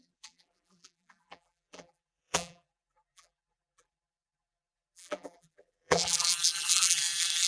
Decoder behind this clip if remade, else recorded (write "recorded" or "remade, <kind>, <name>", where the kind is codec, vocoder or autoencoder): remade, vocoder, BigVGAN v2